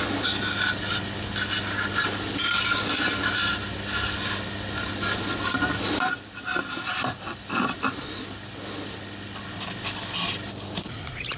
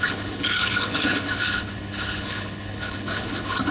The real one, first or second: first